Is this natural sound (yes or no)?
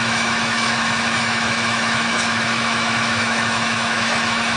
no